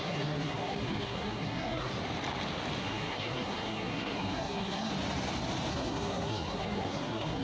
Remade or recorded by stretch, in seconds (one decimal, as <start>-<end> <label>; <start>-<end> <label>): 0.0-1.9 remade; 1.9-2.8 recorded; 2.8-4.9 remade; 4.9-5.7 recorded; 5.7-7.4 remade